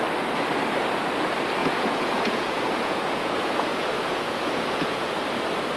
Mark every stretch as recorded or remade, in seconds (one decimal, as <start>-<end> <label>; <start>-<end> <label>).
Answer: 0.0-1.6 recorded; 1.6-5.1 remade; 5.1-5.8 recorded